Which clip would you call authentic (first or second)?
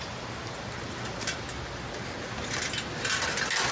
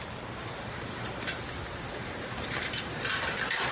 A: first